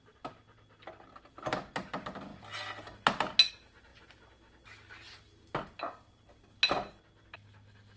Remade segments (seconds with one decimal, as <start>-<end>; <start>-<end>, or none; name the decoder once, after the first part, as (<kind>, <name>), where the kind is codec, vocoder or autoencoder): none